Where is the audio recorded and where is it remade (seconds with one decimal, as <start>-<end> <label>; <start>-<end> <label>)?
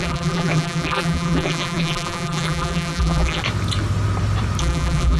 0.0-3.4 remade; 3.4-4.6 recorded; 4.6-5.2 remade